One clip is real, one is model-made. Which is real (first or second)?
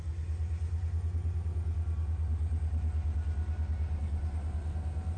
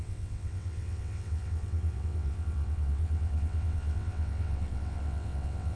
first